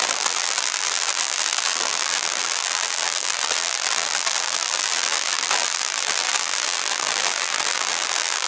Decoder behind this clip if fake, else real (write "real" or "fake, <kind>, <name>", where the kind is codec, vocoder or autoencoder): fake, vocoder, BigVGAN v2